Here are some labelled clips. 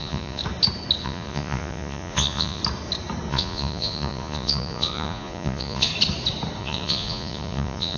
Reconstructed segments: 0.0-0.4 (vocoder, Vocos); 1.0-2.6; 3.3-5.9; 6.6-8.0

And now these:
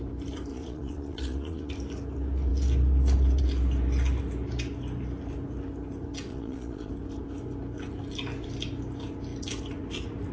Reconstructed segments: 0.5-1.7 (vocoder, Vocos); 6.3-6.9

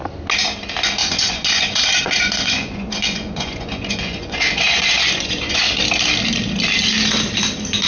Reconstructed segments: 1.0-5.7 (vocoder, Vocos)

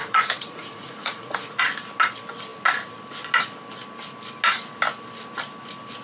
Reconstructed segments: 0.0-1.6 (vocoder, Vocos)

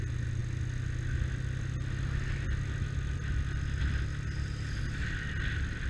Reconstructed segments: none